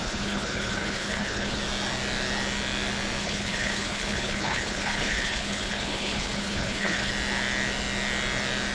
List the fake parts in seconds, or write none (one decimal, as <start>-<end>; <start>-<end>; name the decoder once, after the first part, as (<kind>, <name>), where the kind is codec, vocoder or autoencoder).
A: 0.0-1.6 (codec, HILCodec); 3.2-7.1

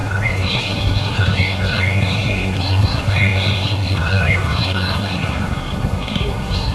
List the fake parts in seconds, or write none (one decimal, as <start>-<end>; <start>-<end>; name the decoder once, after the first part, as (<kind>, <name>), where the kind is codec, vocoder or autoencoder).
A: 0.0-6.7 (codec, SNAC)

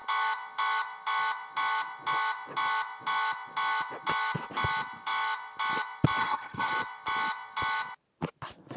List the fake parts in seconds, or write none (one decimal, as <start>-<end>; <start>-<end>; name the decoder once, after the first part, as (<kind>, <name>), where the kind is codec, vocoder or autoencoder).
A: 6.2-6.7 (codec, SNAC)

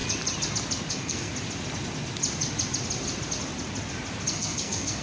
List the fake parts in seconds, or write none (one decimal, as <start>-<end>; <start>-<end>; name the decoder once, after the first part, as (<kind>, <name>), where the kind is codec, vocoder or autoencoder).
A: 0.9-1.3 (codec, SNAC); 4.3-5.0

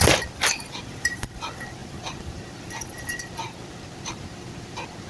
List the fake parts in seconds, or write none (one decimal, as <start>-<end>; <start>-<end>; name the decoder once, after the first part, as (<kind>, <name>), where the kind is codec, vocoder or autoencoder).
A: none